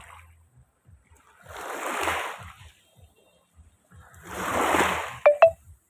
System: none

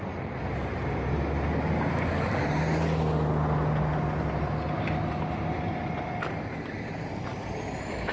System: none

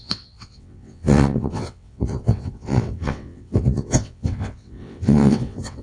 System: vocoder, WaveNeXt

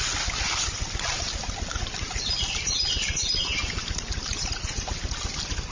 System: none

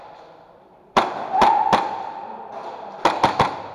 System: none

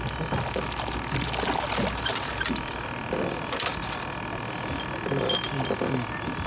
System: none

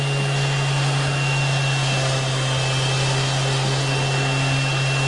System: none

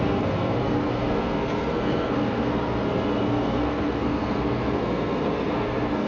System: codec, SNAC